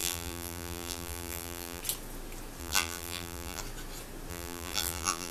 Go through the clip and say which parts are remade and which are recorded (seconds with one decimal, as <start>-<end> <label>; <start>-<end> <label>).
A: 0.0-1.8 remade; 1.8-2.6 recorded; 2.6-3.6 remade; 3.6-4.3 recorded; 4.3-5.3 remade